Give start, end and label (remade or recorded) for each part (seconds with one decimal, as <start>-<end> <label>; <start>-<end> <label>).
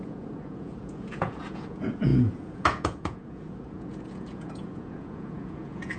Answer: 0.0-6.0 remade